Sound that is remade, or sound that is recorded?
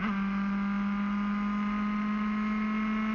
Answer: recorded